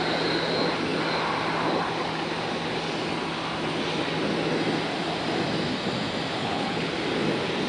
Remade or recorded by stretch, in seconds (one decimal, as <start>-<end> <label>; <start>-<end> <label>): 0.0-6.4 recorded; 6.4-6.9 remade; 6.9-7.7 recorded